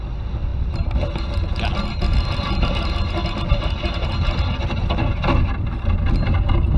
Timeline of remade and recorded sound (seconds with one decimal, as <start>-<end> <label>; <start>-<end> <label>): 0.0-6.8 recorded